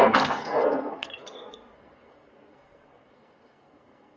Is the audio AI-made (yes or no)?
yes